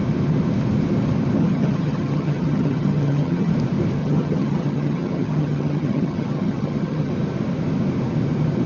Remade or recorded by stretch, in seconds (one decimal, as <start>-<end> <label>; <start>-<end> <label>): 0.0-1.4 recorded; 1.4-3.5 remade; 3.5-4.0 recorded; 4.0-7.1 remade; 7.1-8.7 recorded